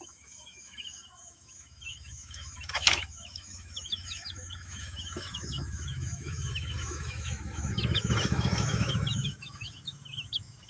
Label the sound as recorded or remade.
remade